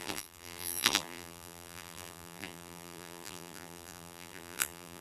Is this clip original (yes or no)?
no